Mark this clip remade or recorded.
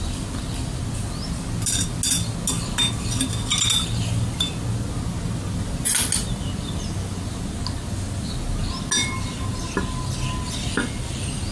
recorded